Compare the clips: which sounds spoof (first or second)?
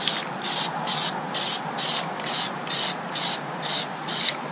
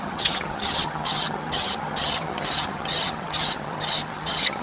second